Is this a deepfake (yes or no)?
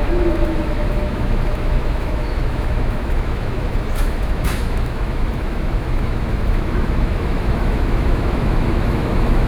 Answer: yes